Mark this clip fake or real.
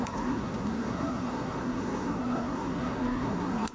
fake